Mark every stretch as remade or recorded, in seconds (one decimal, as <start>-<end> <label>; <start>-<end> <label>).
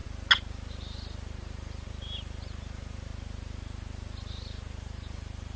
0.0-0.5 recorded; 0.5-3.1 remade; 3.1-4.3 recorded; 4.3-5.6 remade